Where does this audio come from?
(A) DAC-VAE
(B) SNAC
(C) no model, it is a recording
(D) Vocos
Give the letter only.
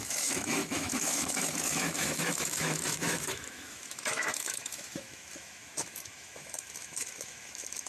A